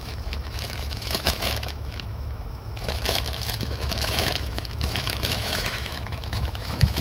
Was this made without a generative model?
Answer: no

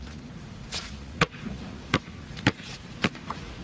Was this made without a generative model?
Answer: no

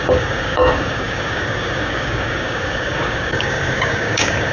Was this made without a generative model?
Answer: no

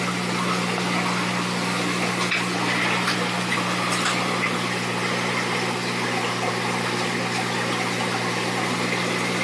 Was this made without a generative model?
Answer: yes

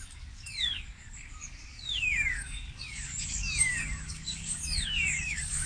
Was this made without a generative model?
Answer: no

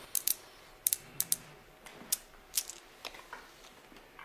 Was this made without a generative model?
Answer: yes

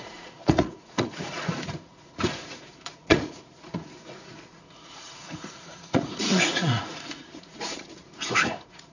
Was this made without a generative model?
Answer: no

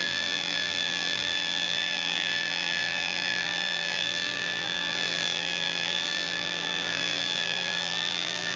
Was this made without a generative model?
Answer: no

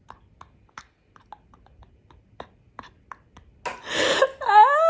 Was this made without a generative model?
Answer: yes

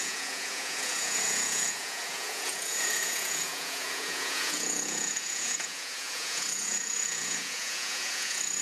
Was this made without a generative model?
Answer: no